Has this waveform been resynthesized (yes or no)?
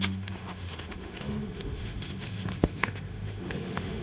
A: yes